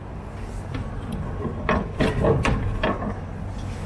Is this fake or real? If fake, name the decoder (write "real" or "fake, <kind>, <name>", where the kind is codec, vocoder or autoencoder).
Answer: real